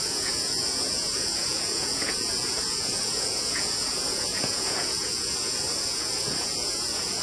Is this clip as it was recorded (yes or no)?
no